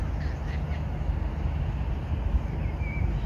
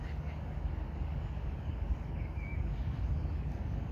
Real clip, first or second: first